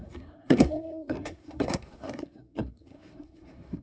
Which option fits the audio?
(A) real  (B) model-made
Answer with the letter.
B